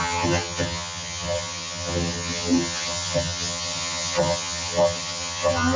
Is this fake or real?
fake